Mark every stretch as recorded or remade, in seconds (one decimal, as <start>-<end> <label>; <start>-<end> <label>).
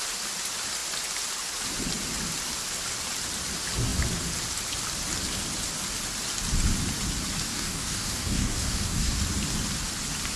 0.0-7.5 recorded; 7.5-9.2 remade; 9.2-10.4 recorded